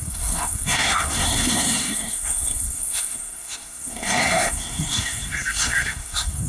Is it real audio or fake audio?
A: fake